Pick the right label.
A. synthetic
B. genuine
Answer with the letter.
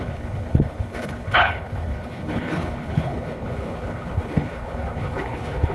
A